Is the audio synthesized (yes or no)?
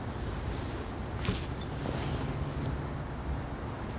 no